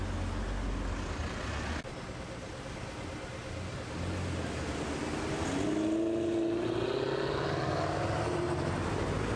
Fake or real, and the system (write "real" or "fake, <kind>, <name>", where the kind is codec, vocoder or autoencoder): real